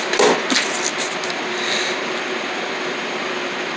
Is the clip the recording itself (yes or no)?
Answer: yes